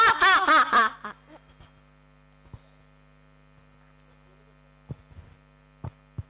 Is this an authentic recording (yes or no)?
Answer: yes